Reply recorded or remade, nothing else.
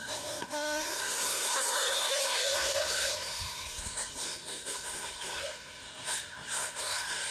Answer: remade